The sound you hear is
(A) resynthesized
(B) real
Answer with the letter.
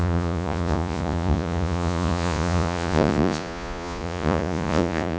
A